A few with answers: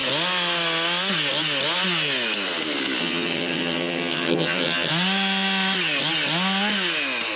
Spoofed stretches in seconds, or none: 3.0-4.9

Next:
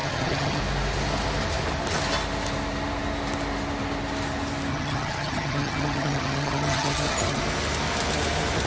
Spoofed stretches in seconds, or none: 0.0-0.6; 4.7-7.4

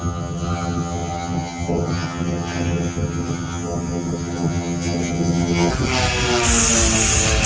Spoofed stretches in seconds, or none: 0.0-5.7

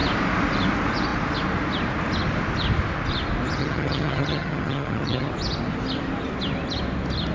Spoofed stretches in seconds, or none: 3.6-5.3